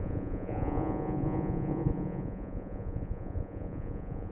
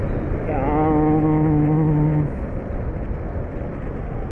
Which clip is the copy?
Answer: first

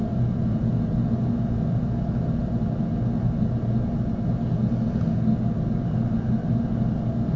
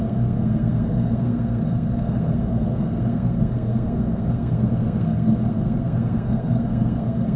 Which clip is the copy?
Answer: second